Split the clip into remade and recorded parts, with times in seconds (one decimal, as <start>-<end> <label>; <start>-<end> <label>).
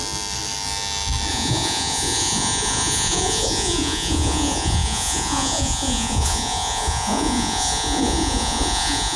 0.0-1.3 recorded; 1.3-9.2 remade